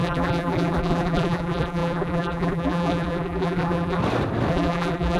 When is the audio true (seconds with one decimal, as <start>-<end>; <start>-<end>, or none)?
4.0-4.5